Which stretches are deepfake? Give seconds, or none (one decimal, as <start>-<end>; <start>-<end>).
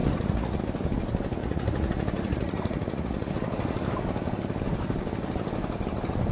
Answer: 0.0-0.6; 1.4-3.3